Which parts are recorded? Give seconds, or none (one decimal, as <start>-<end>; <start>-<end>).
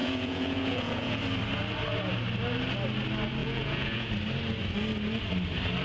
1.2-3.4; 4.1-5.8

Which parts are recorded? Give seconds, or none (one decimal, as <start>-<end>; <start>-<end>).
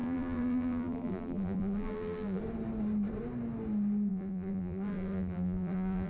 2.4-4.1